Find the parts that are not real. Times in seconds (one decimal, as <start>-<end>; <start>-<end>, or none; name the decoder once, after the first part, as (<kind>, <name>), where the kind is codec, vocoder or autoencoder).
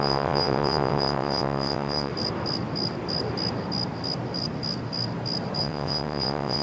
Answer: 0.0-2.1 (vocoder, WaveNeXt); 5.6-6.6